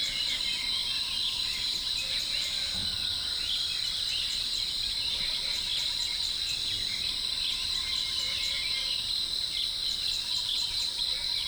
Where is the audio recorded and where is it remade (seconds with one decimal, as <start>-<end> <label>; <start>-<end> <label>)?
0.0-0.8 recorded; 0.8-2.2 remade; 2.2-11.5 recorded